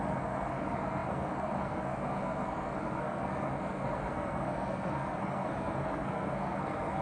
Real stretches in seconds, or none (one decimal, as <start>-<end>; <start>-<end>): none